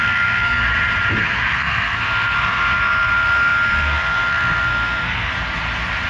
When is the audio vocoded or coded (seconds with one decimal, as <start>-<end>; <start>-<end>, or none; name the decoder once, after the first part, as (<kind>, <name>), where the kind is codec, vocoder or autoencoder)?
0.0-0.6 (codec, SNAC); 1.2-5.3